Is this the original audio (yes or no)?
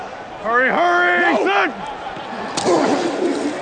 yes